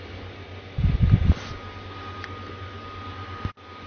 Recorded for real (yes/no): yes